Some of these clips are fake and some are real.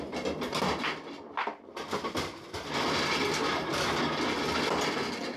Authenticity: real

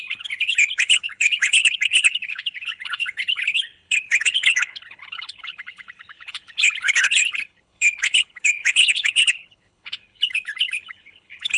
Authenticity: fake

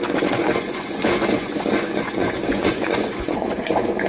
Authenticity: fake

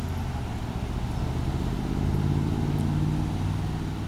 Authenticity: real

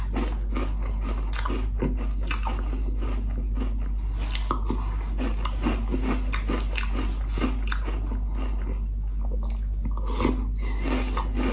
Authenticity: real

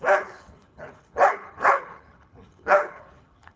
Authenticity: fake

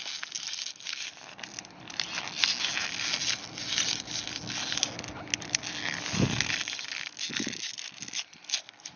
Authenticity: real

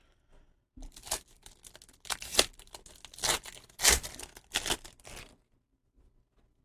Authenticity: real